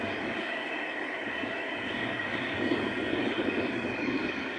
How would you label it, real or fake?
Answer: fake